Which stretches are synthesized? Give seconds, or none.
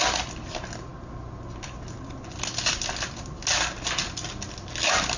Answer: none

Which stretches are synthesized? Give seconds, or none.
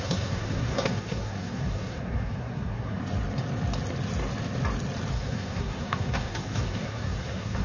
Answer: 0.0-3.0 (codec, SNAC); 5.1-7.6